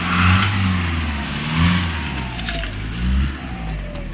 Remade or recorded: recorded